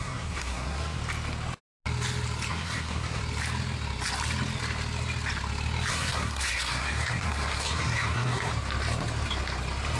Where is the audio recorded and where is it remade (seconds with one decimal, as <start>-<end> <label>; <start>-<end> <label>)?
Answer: 0.0-1.0 remade; 1.0-2.5 recorded; 2.5-3.2 remade; 3.2-5.9 recorded; 5.9-8.5 remade; 8.5-10.0 recorded